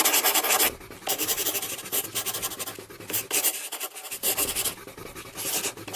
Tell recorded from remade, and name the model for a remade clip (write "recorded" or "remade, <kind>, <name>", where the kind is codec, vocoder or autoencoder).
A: recorded